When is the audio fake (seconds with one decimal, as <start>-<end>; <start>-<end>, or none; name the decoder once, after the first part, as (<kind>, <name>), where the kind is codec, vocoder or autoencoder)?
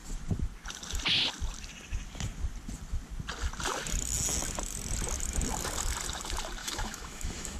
6.6-7.6 (autoencoder, DAC-VAE)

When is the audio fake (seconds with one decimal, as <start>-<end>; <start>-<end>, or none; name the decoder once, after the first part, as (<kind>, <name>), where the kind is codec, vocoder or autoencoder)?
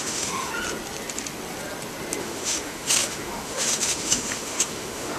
0.0-0.5 (autoencoder, DAC-VAE); 2.2-5.2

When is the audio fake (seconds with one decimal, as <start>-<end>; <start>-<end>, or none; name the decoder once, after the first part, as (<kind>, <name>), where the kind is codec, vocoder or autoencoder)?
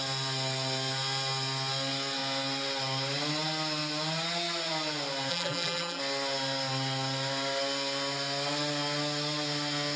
5.3-6.0 (vocoder, BigVGAN v2)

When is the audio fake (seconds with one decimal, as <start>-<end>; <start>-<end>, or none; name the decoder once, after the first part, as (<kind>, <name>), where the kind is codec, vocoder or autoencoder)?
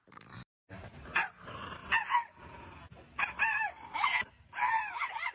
0.0-1.8 (vocoder, BigVGAN v2); 2.4-4.1; 4.7-5.3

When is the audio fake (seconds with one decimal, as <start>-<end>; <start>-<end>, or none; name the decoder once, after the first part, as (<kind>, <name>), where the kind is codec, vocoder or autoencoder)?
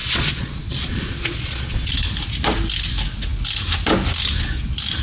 0.0-1.9 (vocoder, Vocos)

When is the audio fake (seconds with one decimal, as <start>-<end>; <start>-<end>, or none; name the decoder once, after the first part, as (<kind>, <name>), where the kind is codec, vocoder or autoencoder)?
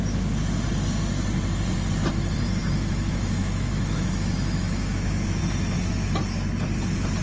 2.6-5.4 (autoencoder, DAC-VAE)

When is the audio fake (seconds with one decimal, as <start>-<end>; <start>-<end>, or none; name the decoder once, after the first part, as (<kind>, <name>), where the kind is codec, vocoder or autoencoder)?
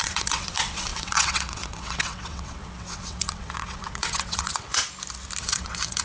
0.0-4.8 (vocoder, WaveNeXt); 5.4-6.0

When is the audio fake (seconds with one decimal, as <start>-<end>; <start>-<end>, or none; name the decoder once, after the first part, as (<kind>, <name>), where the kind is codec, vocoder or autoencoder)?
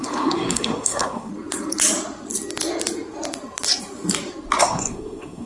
0.0-1.3 (codec, SNAC); 4.6-5.5